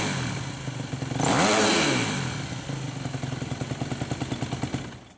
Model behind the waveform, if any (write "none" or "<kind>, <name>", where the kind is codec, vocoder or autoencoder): none